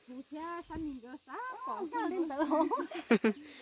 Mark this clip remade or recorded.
recorded